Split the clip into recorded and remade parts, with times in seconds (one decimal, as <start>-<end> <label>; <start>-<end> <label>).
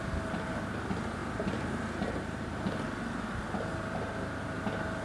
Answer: 0.0-5.0 recorded